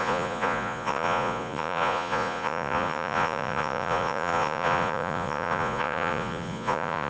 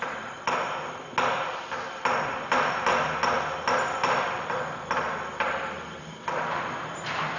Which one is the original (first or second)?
second